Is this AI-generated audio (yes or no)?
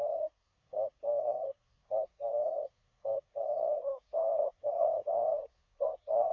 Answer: yes